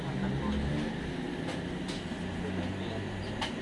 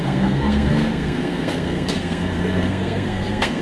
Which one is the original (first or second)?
first